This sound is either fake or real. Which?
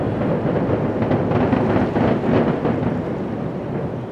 real